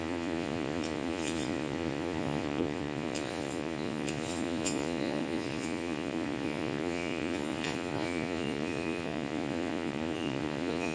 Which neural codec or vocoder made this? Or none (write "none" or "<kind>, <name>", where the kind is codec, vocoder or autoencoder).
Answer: vocoder, Vocos